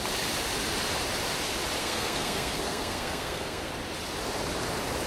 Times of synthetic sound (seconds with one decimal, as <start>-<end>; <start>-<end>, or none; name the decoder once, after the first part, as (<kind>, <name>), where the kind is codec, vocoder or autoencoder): 1.8-3.7 (codec, SNAC)